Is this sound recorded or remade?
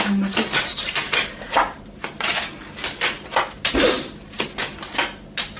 recorded